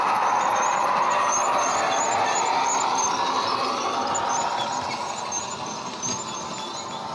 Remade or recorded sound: recorded